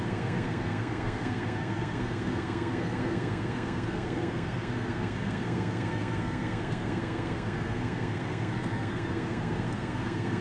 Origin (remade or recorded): remade